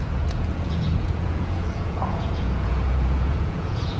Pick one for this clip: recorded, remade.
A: remade